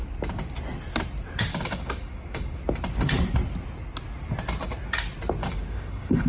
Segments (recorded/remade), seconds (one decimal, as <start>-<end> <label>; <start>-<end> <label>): 0.0-1.5 recorded; 1.5-2.6 remade; 2.6-5.4 recorded; 5.4-6.3 remade